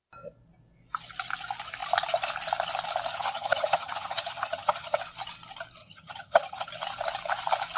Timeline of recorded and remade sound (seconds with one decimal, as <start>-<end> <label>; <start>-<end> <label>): 0.0-3.1 recorded; 3.1-5.0 remade; 5.0-5.8 recorded; 5.8-6.7 remade; 6.7-7.8 recorded